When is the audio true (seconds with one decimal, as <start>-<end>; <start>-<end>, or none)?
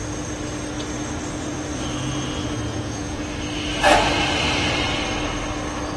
0.0-2.7; 3.2-6.0